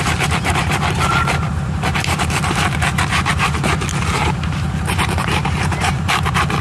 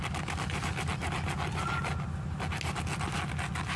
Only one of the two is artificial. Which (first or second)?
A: first